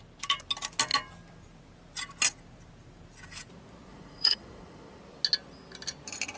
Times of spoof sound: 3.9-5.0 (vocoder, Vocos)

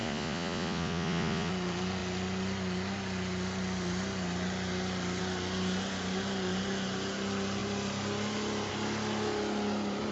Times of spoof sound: 0.0-1.5 (vocoder, Vocos)

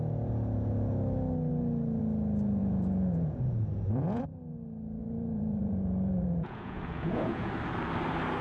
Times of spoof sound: 2.6-4.2 (vocoder, Vocos); 5.0-7.5

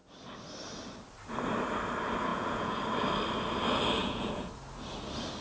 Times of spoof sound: 2.3-2.8 (vocoder, Vocos); 4.0-4.5

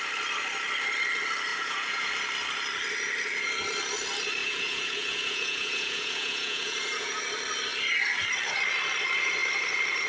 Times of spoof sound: 1.5-2.1 (vocoder, Vocos); 4.4-7.2

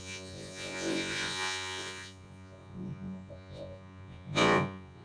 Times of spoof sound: 0.0-5.0 (vocoder, Vocos)

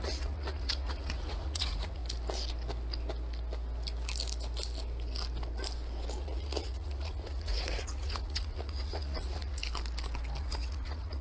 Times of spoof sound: 0.0-2.0 (vocoder, Vocos); 6.2-9.6; 10.4-11.2

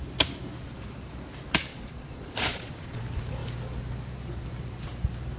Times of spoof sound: 1.7-3.0 (vocoder, Vocos)